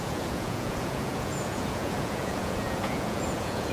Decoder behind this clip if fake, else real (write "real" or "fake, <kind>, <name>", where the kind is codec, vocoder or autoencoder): fake, vocoder, Vocos